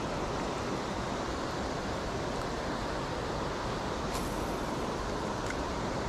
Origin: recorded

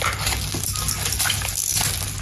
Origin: recorded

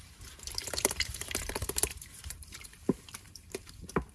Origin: remade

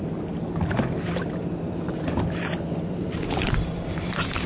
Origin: remade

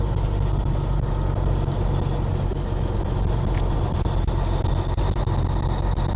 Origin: recorded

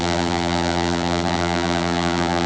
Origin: remade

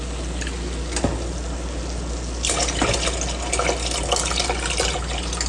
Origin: recorded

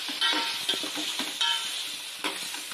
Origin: recorded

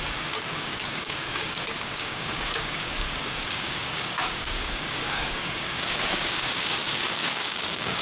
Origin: remade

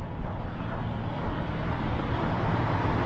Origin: recorded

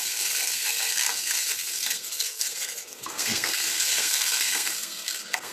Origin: remade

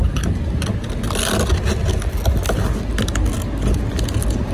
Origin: recorded